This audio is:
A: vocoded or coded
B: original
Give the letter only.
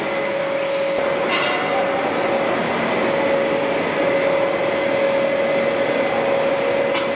B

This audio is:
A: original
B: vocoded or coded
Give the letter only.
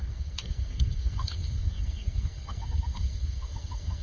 B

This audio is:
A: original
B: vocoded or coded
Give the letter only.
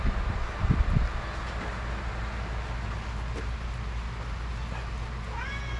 A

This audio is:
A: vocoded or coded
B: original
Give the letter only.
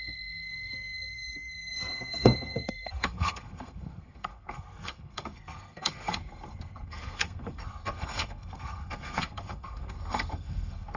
A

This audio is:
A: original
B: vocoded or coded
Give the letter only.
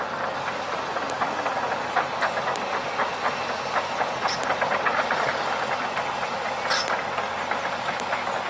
A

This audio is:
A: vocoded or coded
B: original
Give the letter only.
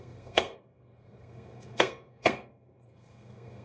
A